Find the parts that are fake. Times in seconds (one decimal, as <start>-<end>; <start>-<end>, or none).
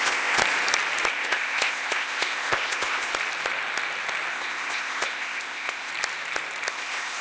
0.0-0.4; 1.1-3.1; 4.3-5.9; 6.7-7.2